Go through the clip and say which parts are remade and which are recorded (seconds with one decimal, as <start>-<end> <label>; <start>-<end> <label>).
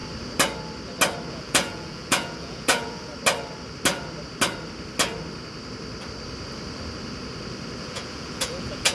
0.0-1.3 recorded; 1.3-3.1 remade; 3.1-7.8 recorded; 7.8-8.9 remade